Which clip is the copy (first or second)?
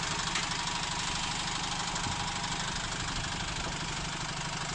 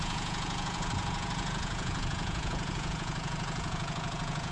second